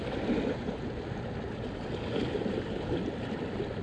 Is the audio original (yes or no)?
yes